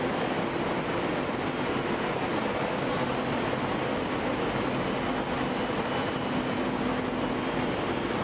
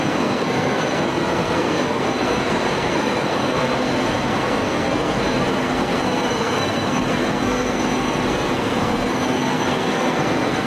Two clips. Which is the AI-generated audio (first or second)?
second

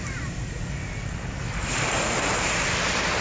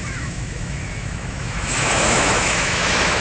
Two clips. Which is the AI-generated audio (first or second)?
second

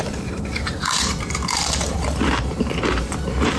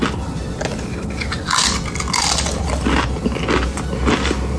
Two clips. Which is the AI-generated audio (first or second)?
first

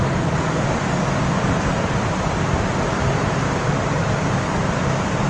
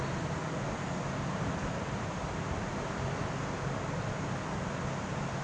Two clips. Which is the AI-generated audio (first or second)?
first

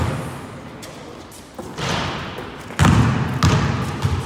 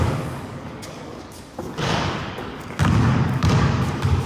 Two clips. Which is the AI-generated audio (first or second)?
second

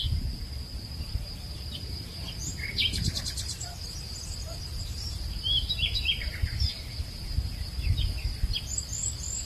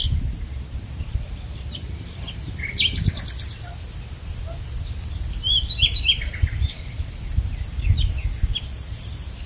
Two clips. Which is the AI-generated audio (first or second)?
first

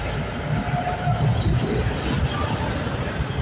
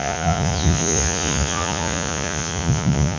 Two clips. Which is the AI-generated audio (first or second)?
second